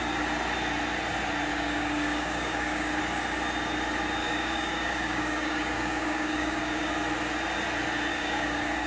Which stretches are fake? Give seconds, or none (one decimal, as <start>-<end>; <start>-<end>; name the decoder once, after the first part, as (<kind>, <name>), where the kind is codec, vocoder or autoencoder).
1.5-3.0 (codec, DAC); 4.2-6.9; 8.1-8.9